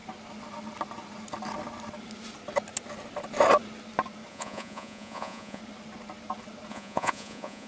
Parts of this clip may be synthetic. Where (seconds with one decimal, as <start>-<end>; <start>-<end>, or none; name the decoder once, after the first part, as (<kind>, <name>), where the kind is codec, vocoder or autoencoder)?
4.3-5.6 (vocoder, Vocos); 6.7-7.7